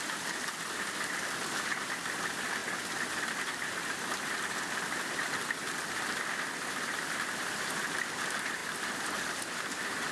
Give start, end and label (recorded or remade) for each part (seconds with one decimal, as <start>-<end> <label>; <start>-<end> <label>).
0.0-8.6 remade; 8.6-10.1 recorded